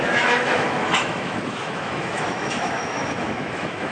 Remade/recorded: remade